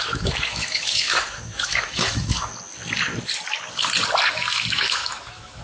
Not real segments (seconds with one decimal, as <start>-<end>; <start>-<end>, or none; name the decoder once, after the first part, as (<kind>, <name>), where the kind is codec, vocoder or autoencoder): 0.0-2.5 (autoencoder, DAC-VAE); 4.3-5.6